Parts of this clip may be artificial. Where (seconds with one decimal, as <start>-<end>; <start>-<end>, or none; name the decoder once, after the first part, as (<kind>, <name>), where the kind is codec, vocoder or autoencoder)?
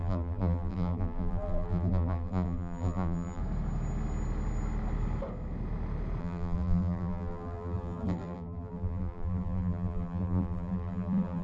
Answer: 0.0-3.4 (vocoder, BigVGAN v2); 6.2-11.4